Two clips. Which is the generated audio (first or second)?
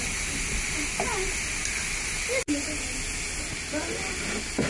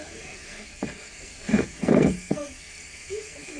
second